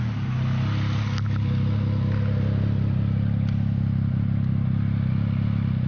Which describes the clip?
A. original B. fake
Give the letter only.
A